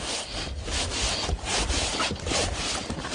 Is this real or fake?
real